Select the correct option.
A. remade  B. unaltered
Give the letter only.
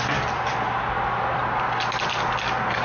B